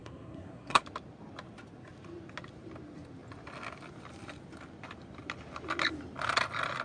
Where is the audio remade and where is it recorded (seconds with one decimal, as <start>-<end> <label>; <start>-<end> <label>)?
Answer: 0.0-0.8 remade; 0.8-6.8 recorded